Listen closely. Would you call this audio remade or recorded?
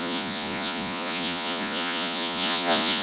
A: remade